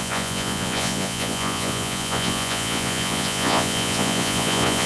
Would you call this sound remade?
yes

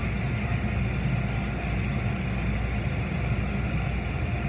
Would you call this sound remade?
no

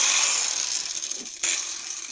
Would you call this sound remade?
no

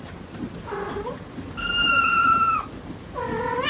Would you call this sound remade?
no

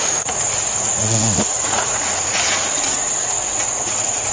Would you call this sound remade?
yes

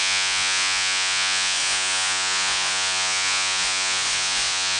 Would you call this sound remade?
yes